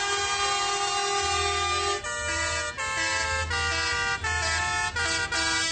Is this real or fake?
real